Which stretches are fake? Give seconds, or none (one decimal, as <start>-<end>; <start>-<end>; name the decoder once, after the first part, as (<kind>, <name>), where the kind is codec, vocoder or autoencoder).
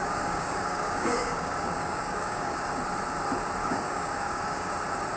0.0-2.7 (codec, DAC); 3.6-4.7